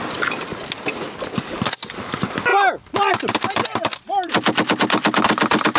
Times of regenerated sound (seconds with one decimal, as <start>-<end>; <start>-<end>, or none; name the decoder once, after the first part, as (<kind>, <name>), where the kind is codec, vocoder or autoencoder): none